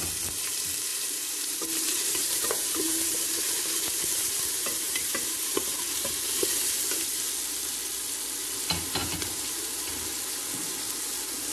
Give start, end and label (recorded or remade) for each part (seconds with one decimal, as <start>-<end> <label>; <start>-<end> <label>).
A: 0.0-0.9 recorded; 0.9-6.1 remade; 6.1-9.0 recorded; 9.0-9.9 remade; 9.9-11.5 recorded